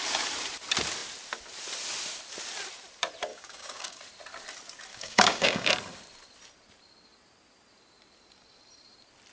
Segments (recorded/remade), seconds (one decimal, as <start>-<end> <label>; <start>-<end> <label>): 0.0-3.3 recorded; 3.3-4.0 remade; 4.0-4.9 recorded; 4.9-5.7 remade; 5.7-9.3 recorded